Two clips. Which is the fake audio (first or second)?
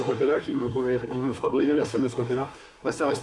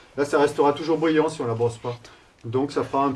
first